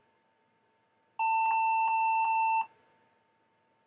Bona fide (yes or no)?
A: yes